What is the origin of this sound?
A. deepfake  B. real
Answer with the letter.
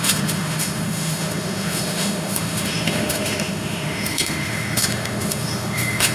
A